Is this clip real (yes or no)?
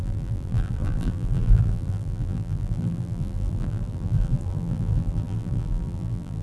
no